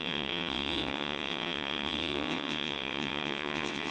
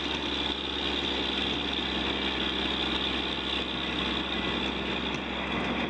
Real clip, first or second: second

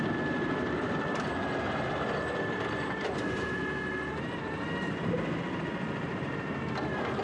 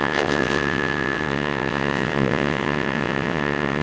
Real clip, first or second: first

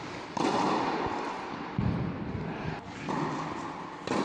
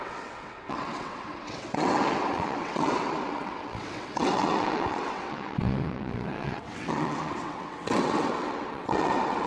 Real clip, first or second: first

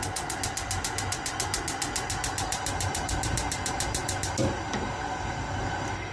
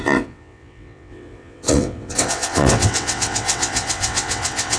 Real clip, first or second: first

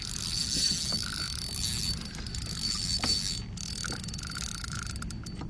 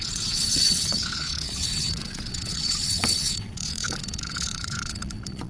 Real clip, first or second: first